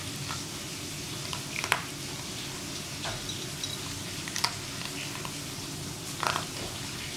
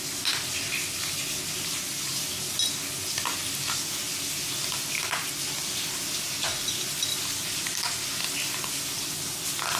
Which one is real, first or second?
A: second